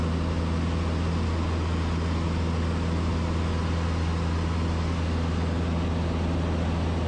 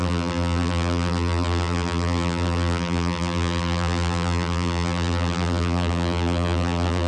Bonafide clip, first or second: first